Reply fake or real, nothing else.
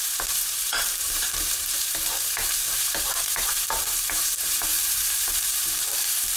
fake